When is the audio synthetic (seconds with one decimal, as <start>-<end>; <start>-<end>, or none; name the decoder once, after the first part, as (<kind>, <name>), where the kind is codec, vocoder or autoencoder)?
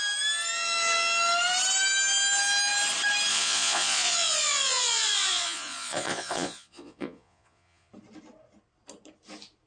3.3-7.9 (vocoder, Vocos)